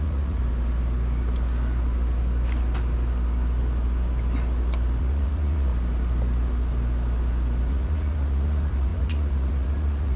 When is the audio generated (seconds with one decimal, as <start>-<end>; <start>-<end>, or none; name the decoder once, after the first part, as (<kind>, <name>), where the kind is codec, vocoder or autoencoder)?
0.0-0.4 (vocoder, Vocos); 5.0-5.7; 7.7-10.2